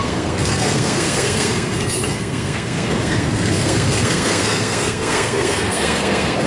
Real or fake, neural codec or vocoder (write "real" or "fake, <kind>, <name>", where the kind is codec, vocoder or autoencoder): fake, codec, SNAC